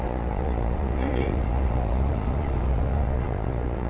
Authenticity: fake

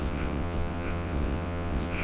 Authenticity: fake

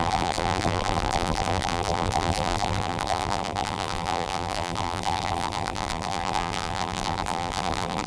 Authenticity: fake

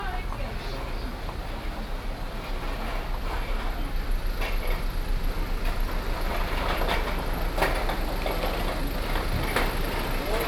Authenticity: real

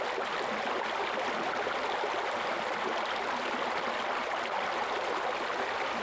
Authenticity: real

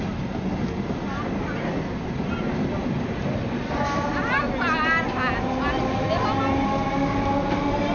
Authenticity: real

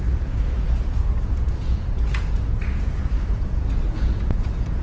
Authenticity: fake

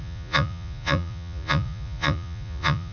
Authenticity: fake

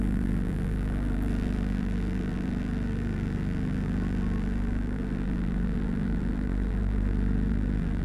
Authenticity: fake